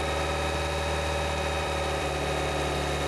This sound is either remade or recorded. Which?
remade